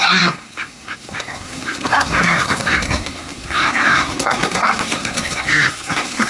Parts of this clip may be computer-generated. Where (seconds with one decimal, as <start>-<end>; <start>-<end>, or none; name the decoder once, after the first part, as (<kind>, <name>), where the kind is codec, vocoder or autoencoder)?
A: 0.0-6.3 (codec, SNAC)

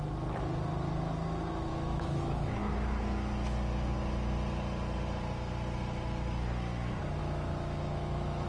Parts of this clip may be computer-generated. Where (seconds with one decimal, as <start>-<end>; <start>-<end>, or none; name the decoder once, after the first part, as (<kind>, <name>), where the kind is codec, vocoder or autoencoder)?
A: 1.7-3.0 (autoencoder, DAC-VAE); 7.2-8.5

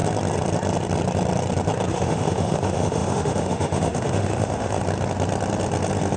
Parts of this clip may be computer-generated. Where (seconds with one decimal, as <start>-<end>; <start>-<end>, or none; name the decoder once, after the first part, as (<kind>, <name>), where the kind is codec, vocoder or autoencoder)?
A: 1.9-4.8 (autoencoder, DAC-VAE)

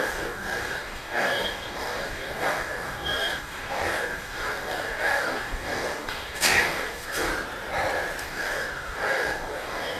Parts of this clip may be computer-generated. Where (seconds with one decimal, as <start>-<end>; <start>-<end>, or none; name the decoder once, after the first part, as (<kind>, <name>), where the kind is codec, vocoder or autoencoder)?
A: 0.0-7.3 (codec, DAC); 8.2-10.0

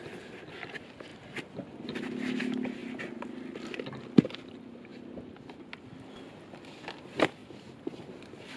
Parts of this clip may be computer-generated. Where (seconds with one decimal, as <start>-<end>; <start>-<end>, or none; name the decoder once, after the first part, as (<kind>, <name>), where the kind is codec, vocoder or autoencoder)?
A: 1.1-2.4 (vocoder, BigVGAN v2); 7.4-8.1

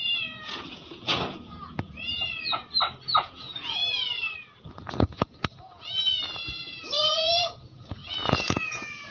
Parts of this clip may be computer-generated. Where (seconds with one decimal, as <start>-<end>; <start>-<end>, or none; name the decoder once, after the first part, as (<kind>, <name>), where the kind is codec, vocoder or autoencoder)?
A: 0.0-2.6 (vocoder, Vocos); 3.2-3.8; 4.9-9.1